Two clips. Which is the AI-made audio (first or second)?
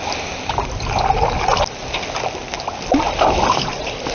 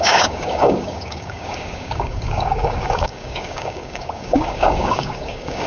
second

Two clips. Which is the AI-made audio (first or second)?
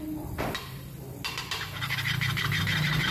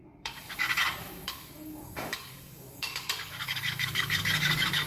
second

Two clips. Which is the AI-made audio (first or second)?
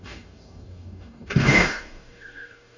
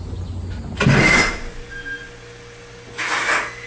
first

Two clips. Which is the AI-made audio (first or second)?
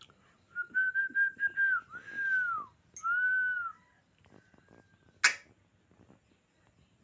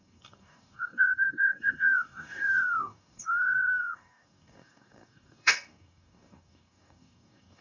second